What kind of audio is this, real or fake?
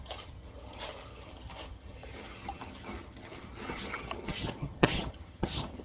fake